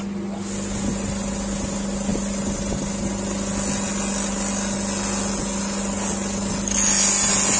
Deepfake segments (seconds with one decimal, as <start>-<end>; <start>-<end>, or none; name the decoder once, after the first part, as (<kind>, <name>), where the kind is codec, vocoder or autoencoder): none